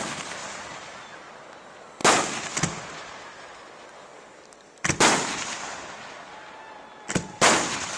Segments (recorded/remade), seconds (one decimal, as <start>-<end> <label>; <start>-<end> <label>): 0.0-0.4 recorded; 0.4-1.3 remade; 1.3-2.0 recorded; 2.0-3.6 remade; 3.6-8.0 recorded